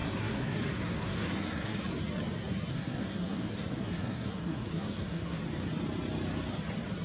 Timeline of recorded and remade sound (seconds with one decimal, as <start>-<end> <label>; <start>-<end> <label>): 0.0-1.8 remade; 1.8-2.7 recorded; 2.7-5.4 remade; 5.4-7.0 recorded